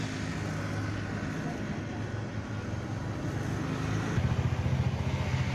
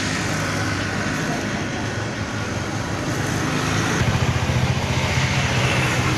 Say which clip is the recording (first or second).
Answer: first